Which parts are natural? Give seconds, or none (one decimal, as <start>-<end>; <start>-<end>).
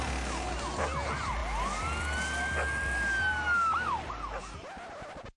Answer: 0.0-5.4